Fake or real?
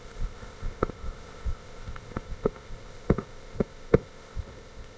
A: fake